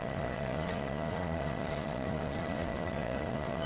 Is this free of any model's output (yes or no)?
no